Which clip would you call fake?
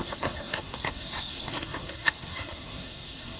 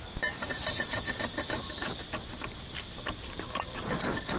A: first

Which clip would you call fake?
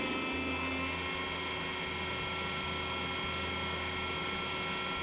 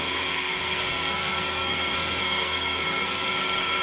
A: second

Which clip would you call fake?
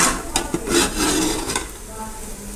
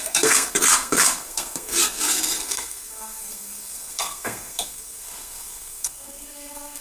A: second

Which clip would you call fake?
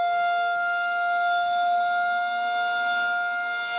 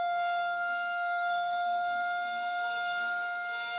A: second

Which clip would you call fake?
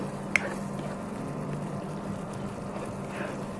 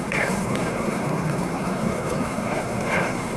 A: second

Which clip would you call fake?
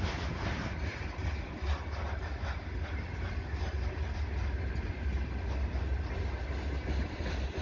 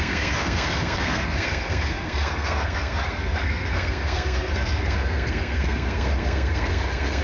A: second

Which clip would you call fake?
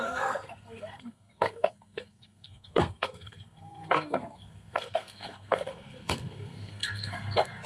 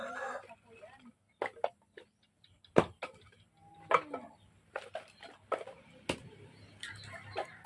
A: first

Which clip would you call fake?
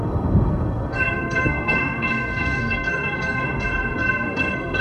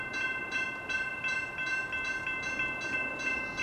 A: first